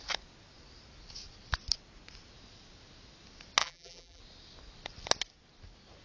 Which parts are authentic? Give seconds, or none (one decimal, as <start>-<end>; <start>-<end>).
0.0-3.6; 4.2-6.0